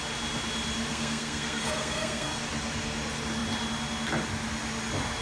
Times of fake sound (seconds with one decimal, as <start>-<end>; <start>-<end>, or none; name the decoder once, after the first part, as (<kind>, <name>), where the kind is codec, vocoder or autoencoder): 0.9-2.4 (codec, SNAC)